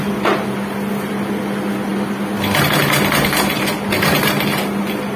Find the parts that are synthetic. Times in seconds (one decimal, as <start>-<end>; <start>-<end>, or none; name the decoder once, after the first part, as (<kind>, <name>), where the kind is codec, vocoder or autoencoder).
none